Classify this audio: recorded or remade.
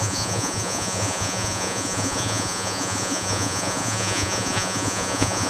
remade